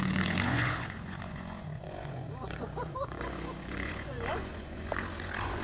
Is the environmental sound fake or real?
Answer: fake